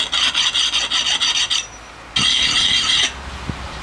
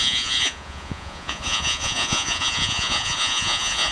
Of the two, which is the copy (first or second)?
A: second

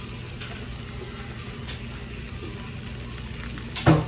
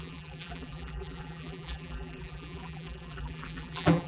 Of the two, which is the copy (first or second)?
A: second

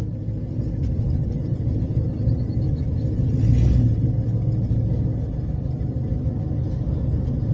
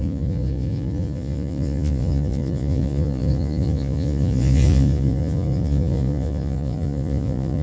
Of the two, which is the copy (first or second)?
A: second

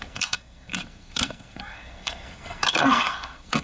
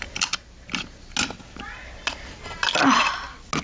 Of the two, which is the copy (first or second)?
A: first